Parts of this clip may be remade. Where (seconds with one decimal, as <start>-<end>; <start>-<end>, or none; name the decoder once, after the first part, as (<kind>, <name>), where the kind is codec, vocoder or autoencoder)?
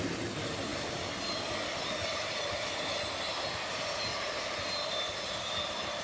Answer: none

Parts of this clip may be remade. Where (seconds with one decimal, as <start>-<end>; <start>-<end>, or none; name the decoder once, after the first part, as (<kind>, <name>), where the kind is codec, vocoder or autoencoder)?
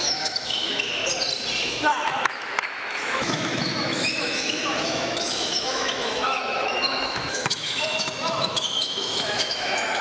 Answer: 0.0-1.0 (autoencoder, DAC-VAE); 1.6-10.0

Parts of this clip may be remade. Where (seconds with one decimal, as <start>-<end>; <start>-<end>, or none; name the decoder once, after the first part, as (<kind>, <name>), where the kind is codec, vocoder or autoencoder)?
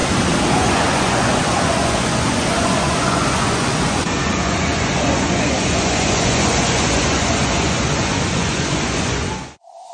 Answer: 0.5-9.9 (vocoder, Vocos)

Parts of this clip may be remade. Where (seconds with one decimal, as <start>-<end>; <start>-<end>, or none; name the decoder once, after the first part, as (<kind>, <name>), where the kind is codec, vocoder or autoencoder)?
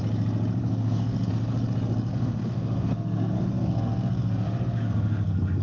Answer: 0.6-1.3 (codec, SNAC); 2.1-5.6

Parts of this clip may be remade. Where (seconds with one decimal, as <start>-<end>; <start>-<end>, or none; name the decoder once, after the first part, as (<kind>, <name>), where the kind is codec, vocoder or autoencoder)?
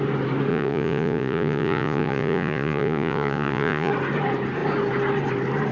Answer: 0.5-3.9 (vocoder, Vocos)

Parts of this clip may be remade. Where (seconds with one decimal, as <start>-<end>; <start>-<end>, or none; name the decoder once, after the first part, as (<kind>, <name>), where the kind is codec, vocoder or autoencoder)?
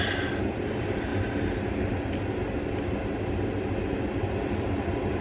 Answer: 0.0-1.1 (vocoder, BigVGAN v2); 4.2-5.2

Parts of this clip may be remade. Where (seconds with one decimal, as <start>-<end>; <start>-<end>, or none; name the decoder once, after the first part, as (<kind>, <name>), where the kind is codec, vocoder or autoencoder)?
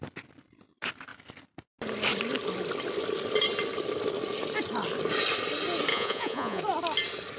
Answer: 5.9-6.6 (vocoder, Vocos)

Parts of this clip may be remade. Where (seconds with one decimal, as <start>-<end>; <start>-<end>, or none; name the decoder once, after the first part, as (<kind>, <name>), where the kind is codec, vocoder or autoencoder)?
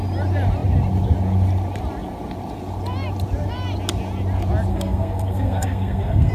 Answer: 4.7-6.3 (codec, SNAC)